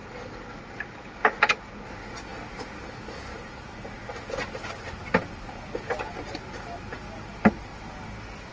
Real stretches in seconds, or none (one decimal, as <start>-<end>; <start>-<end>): 0.0-8.5